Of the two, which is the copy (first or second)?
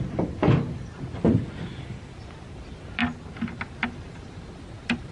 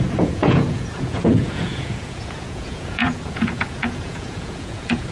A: second